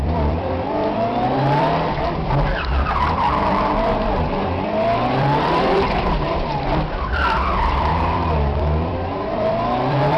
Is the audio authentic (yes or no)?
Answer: no